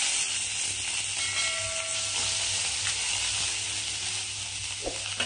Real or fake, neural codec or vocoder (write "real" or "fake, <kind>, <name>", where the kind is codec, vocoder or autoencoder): real